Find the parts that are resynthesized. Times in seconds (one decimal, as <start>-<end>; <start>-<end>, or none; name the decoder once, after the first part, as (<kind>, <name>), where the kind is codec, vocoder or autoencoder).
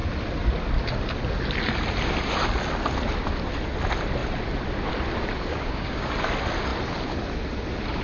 5.5-6.1 (codec, DAC)